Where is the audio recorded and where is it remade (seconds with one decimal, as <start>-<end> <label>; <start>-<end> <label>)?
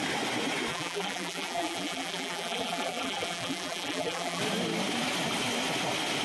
0.0-0.7 recorded; 0.7-4.4 remade; 4.4-6.2 recorded